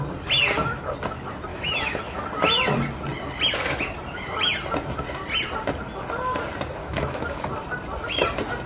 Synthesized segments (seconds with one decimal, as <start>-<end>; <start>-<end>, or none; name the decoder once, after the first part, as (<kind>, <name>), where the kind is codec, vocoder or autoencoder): 1.5-2.2 (autoencoder, DAC-VAE); 6.8-7.5